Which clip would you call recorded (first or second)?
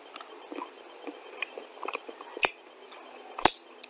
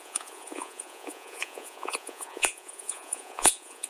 first